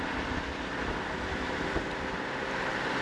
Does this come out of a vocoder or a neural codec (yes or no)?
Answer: no